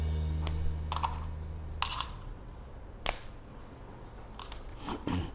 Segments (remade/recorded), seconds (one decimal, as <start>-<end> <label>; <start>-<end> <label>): 0.0-1.9 recorded; 1.9-2.7 remade; 2.7-3.5 recorded; 3.5-4.1 remade; 4.1-4.7 recorded; 4.7-5.3 remade